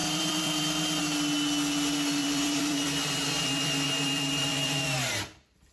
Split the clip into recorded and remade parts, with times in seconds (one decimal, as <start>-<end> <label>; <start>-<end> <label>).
0.0-1.0 remade; 1.0-2.2 recorded; 2.2-4.8 remade; 4.8-5.7 recorded